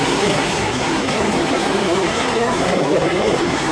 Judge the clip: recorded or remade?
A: remade